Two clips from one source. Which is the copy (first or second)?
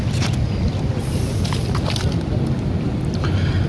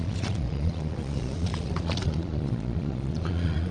second